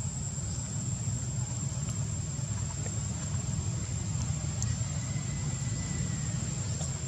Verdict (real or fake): real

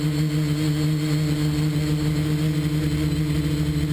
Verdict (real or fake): real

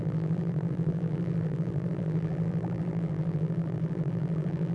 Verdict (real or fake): fake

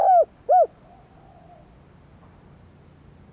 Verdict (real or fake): real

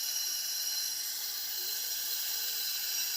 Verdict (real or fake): fake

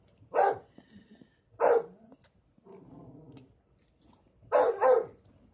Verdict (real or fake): real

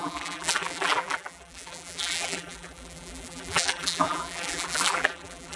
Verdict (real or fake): fake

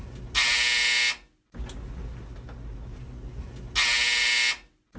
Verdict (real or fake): real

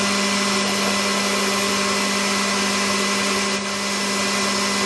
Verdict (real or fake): real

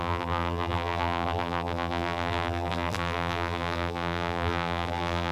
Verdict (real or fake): fake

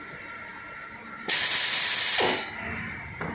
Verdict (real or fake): real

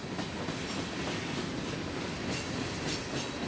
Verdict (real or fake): real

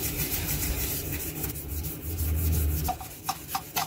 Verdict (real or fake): fake